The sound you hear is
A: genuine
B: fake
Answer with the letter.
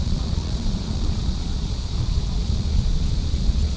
B